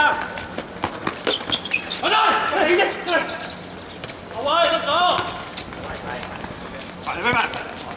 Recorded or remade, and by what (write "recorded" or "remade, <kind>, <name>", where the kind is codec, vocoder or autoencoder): recorded